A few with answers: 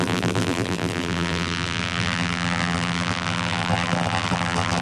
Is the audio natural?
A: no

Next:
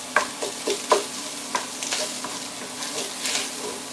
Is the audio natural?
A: yes